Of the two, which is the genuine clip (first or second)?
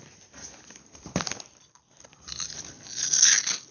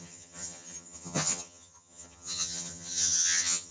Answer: first